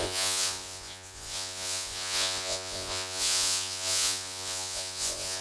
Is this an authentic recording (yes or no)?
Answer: no